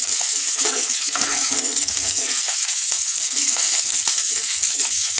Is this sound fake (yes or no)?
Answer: yes